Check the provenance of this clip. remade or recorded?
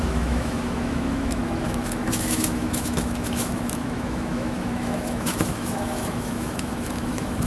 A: remade